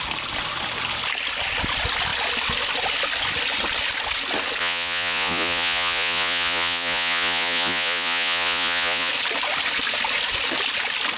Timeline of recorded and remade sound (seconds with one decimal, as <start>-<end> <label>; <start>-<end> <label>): 0.0-4.6 recorded; 4.6-9.1 remade; 9.1-11.2 recorded